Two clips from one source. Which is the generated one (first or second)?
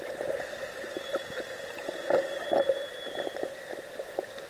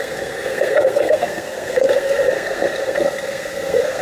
second